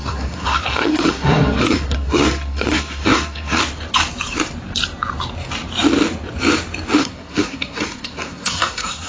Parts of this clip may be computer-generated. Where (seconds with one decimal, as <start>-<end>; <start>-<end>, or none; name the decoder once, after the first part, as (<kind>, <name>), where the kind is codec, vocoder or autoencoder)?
0.0-3.6 (codec, SNAC); 7.0-9.1